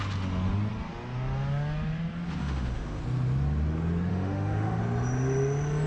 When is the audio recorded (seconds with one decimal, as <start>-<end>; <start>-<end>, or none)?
0.0-2.4; 3.0-4.1; 4.8-5.9